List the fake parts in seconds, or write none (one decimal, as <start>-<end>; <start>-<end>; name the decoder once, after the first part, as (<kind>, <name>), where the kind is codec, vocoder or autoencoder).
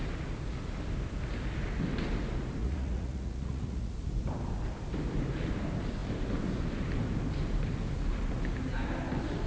2.6-3.9 (vocoder, Vocos)